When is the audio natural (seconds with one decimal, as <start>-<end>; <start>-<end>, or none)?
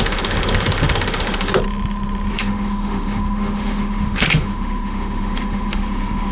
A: 1.5-2.3